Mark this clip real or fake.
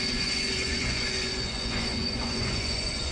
fake